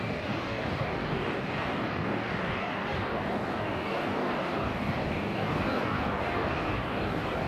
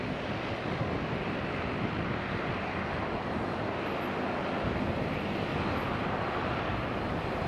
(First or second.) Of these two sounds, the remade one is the first